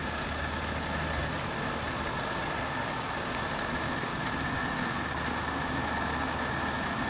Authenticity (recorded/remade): recorded